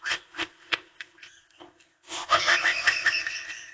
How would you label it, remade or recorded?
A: remade